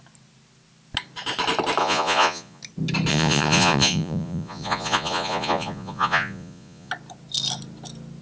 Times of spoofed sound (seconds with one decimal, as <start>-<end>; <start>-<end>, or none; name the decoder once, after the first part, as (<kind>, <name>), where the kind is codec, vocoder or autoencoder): 1.8-2.6 (vocoder, Vocos); 3.1-6.9